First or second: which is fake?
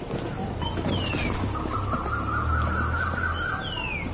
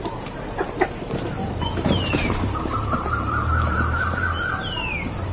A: second